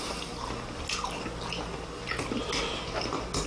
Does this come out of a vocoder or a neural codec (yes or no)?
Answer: no